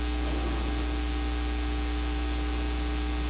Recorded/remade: recorded